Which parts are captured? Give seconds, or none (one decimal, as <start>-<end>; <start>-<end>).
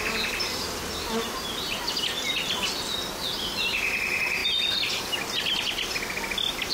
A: 0.0-4.4; 5.0-6.7